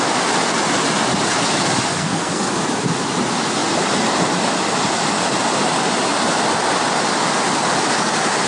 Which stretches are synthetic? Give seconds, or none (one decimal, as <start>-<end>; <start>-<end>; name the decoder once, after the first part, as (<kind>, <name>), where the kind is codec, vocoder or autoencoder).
1.9-2.5 (codec, SNAC)